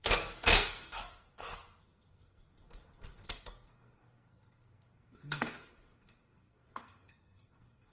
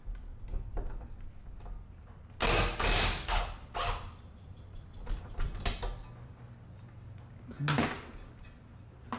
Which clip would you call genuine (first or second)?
second